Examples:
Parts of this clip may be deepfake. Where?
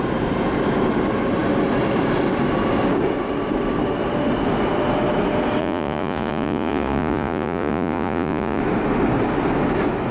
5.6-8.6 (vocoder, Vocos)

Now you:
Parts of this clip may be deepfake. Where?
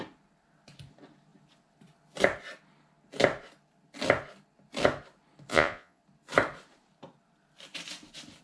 5.5-6.0 (vocoder, Vocos)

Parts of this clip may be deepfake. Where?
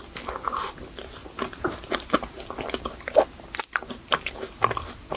none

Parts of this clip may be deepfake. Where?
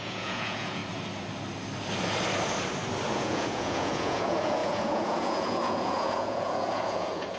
0.0-0.8 (vocoder, Vocos); 3.1-7.4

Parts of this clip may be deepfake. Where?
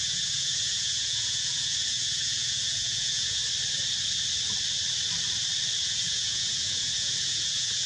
0.0-3.4 (vocoder, Vocos); 5.8-7.9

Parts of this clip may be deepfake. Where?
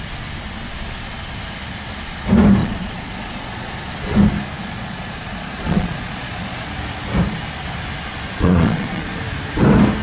2.6-3.7 (vocoder, Vocos); 4.6-6.7; 8.3-9.2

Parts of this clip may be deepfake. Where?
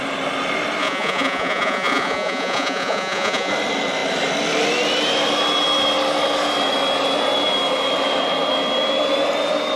0.8-3.5 (vocoder, Vocos)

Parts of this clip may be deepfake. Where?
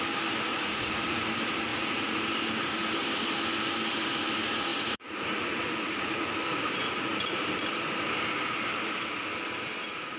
0.5-1.2 (vocoder, Vocos); 1.7-2.2; 4.7-6.3; 6.8-7.4